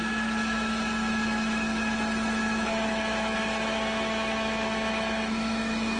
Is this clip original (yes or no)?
no